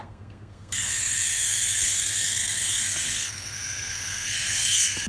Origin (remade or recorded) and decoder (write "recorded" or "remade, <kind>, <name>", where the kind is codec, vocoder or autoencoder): remade, codec, SNAC